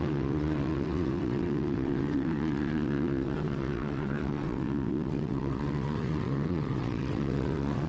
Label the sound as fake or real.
fake